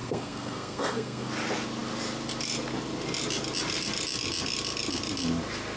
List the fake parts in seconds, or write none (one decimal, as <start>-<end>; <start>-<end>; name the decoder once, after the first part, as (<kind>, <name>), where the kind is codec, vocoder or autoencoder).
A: 0.0-1.3 (codec, SNAC)